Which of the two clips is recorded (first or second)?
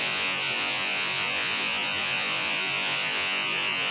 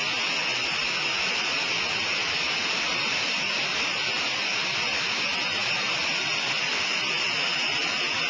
second